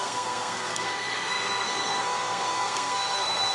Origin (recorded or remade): remade